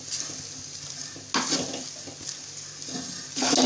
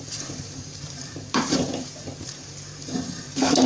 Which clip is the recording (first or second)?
first